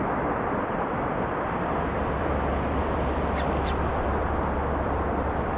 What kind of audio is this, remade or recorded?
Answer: remade